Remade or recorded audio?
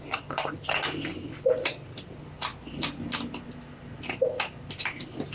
recorded